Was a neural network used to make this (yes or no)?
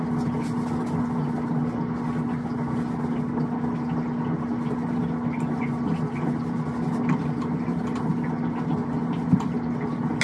no